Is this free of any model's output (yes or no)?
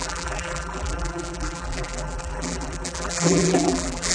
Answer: no